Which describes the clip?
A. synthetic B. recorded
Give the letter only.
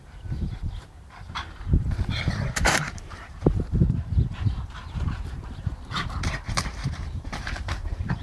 A